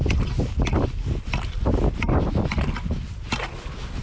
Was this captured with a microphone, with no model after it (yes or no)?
yes